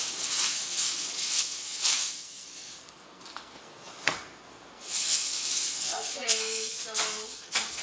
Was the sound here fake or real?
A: fake